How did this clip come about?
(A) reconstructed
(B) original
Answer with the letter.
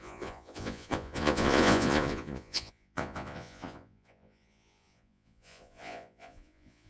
A